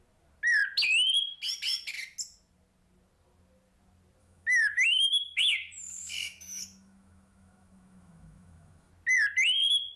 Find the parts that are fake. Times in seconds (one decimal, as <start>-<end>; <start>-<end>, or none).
4.2-8.9